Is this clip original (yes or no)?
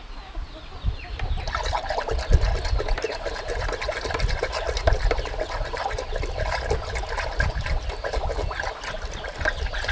yes